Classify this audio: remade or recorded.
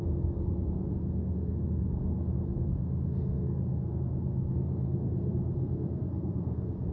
remade